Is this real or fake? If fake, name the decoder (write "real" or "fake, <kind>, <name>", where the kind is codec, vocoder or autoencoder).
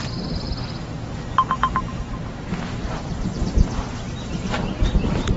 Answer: real